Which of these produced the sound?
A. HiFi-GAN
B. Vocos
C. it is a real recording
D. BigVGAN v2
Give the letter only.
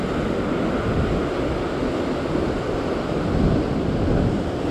C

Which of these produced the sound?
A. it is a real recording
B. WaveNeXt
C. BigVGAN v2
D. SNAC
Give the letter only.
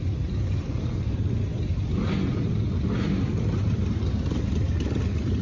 A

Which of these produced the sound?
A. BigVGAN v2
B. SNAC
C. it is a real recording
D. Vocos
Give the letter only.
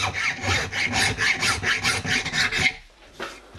C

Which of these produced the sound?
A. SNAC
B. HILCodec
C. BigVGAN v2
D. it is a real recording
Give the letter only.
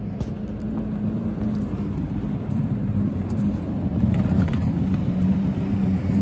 D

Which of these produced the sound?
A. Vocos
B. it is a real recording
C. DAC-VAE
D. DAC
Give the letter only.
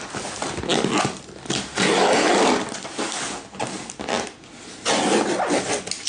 B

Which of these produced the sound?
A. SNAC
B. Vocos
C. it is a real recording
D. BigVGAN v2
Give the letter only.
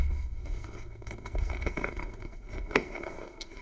A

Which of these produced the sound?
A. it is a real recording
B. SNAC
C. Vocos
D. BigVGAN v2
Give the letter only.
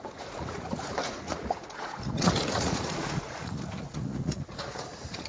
C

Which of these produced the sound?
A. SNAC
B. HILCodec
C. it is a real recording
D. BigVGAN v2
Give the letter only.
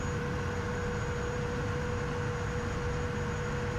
C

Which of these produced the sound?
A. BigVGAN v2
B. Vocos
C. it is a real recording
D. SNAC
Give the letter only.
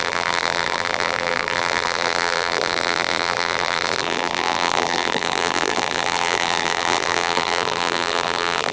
A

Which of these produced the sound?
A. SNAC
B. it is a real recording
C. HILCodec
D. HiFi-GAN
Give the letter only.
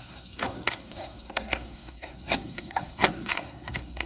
A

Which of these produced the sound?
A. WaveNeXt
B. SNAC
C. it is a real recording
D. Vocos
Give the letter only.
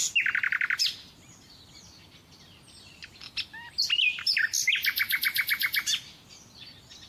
C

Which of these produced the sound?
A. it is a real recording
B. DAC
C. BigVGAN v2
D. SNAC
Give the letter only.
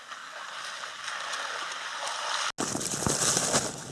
A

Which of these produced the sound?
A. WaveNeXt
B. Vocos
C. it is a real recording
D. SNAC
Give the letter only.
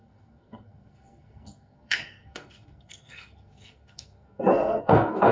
D